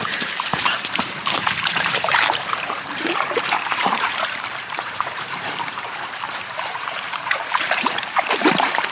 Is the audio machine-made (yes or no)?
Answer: yes